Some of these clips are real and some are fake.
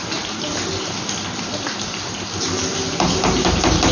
real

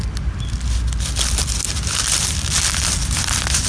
real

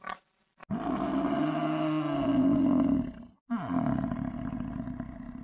real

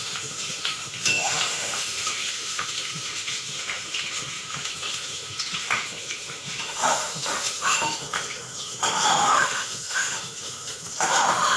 fake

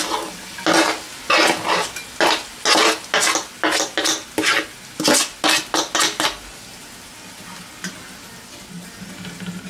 real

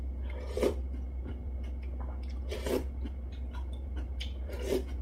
real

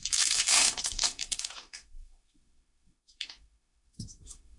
fake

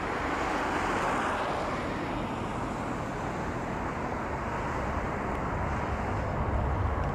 real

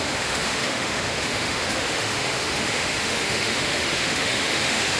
fake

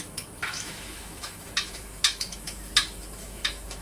fake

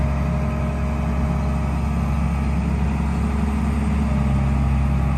real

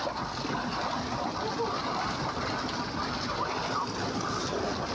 real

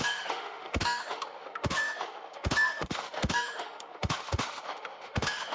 fake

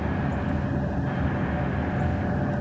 real